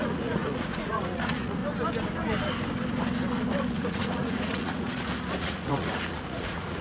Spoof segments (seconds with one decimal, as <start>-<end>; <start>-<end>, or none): 0.0-1.6; 3.7-4.9; 5.4-6.8